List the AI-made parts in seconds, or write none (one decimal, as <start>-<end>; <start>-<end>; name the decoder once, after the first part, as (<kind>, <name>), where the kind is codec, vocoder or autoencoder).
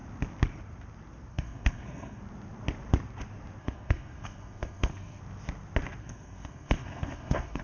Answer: 1.3-2.2 (codec, SNAC); 3.6-5.2; 6.0-7.6